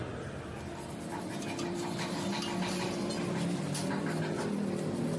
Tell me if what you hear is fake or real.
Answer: real